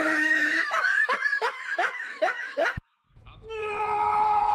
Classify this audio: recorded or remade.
remade